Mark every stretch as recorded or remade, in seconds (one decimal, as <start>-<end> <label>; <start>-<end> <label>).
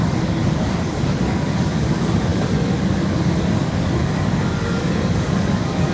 0.0-5.9 remade